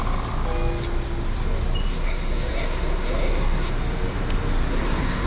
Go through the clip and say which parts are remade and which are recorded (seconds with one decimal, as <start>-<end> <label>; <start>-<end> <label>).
0.0-1.9 recorded; 1.9-3.7 remade; 3.7-4.7 recorded; 4.7-5.3 remade